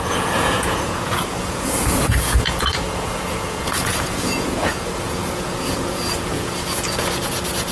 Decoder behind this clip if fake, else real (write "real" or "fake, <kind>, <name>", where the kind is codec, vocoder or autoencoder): fake, vocoder, Vocos